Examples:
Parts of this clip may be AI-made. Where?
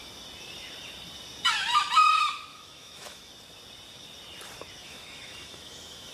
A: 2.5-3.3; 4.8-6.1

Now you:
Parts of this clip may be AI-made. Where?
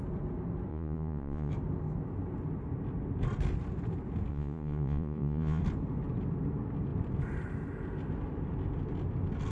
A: 0.7-1.5; 4.3-5.6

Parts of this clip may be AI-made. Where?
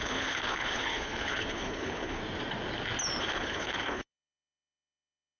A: 0.0-2.2; 3.2-5.4